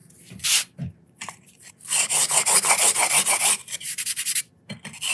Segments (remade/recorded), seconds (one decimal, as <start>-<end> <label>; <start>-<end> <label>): 0.0-1.7 remade; 1.7-2.2 recorded; 2.2-4.2 remade; 4.2-5.1 recorded